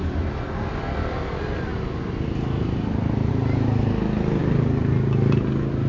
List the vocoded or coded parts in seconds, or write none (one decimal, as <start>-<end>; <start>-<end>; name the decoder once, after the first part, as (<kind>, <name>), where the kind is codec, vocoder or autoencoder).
none